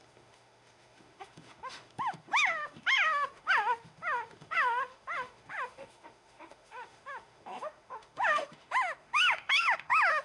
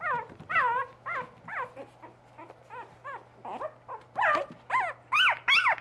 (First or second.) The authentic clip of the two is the second